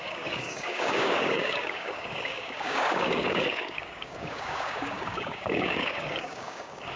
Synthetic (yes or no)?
yes